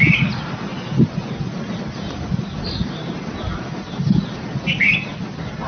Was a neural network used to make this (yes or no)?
no